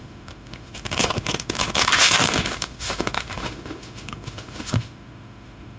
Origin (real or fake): fake